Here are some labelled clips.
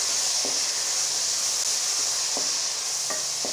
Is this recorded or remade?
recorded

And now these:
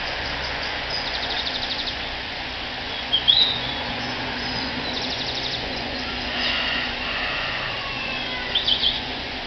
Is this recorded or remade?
remade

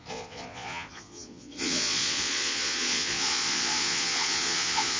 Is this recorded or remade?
remade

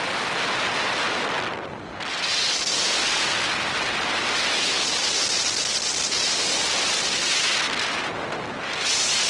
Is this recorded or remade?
recorded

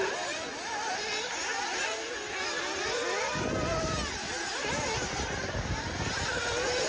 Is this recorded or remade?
recorded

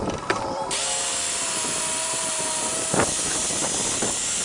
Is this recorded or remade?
recorded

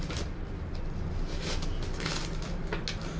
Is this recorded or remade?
recorded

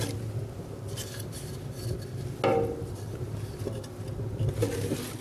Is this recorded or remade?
recorded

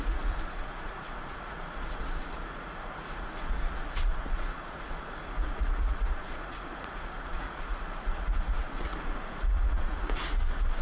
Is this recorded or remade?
remade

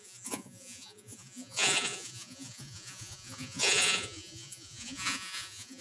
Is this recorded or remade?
remade